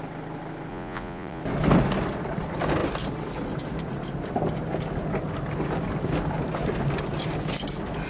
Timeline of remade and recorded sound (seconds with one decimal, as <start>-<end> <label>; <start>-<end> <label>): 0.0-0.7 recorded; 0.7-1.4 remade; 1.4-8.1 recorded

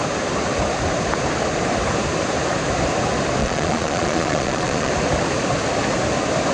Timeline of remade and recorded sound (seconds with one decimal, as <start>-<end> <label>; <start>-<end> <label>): 0.0-3.4 recorded; 3.4-4.9 remade; 4.9-6.5 recorded

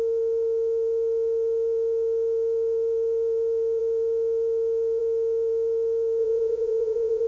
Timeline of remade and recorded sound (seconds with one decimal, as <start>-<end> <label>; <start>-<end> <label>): 0.0-6.2 recorded; 6.2-7.3 remade